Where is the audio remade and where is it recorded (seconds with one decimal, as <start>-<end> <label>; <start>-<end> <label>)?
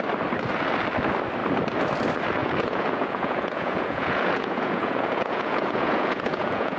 0.0-2.4 recorded; 2.4-6.8 remade